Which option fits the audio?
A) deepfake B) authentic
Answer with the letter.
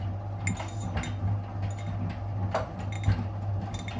B